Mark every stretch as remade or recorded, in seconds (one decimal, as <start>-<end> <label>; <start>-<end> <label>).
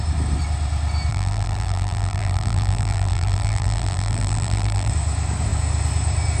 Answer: 0.0-1.1 recorded; 1.1-4.9 remade; 4.9-6.4 recorded